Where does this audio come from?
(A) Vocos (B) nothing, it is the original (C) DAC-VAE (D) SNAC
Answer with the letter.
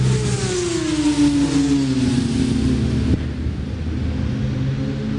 B